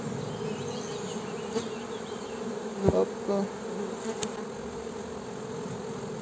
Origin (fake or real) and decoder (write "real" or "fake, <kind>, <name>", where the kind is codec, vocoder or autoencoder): real